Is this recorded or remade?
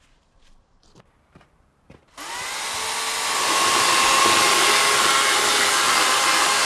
recorded